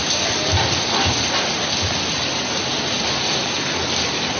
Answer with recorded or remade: recorded